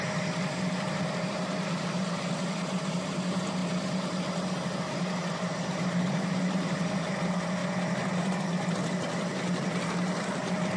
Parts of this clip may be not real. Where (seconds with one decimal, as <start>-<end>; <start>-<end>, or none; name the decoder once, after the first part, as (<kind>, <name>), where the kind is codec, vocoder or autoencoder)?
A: none